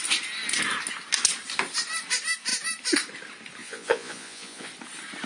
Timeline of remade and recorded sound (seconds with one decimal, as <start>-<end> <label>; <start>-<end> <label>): 0.0-3.6 recorded; 3.6-4.7 remade; 4.7-5.3 recorded

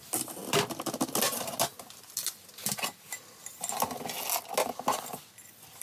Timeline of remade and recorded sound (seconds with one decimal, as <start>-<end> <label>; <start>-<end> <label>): 0.0-5.8 recorded

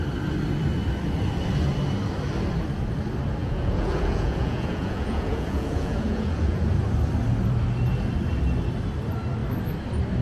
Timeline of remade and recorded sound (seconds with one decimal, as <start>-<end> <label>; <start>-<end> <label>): 0.0-3.4 recorded; 3.4-6.7 remade; 6.7-10.2 recorded

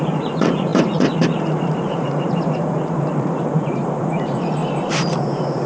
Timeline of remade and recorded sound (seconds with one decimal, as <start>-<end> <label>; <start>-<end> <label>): 0.0-4.6 remade; 4.6-5.2 recorded; 5.2-5.7 remade

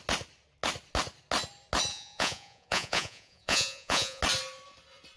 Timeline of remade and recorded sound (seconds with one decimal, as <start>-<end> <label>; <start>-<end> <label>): 0.0-1.9 recorded; 1.9-4.2 remade; 4.2-5.2 recorded

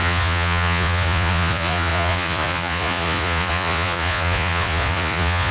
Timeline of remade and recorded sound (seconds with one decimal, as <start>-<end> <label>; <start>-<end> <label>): 0.0-5.5 remade